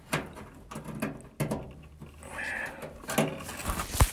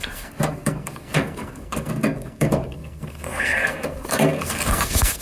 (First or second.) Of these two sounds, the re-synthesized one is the second